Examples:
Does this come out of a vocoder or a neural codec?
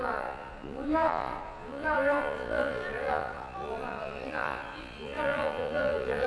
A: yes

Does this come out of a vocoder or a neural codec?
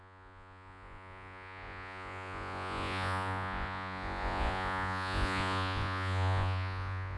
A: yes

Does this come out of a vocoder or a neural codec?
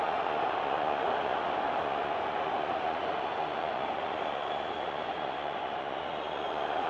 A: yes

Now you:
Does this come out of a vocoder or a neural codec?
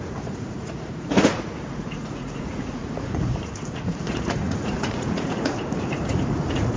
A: yes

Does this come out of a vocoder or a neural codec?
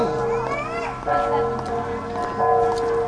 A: no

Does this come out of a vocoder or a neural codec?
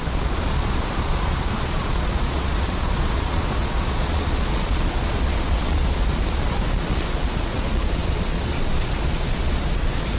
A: yes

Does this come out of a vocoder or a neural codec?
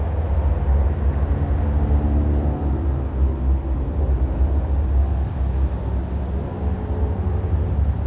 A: no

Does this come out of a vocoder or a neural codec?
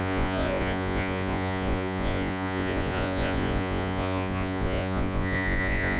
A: yes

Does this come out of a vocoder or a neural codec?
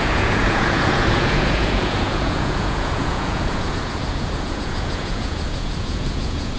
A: yes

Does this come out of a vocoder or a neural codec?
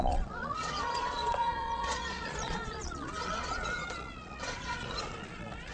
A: yes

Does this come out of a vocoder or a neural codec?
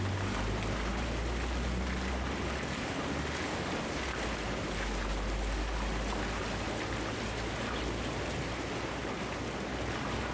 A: no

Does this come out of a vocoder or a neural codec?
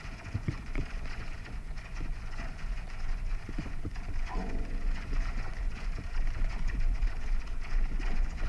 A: yes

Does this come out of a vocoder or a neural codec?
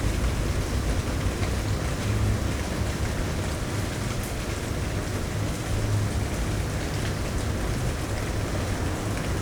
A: no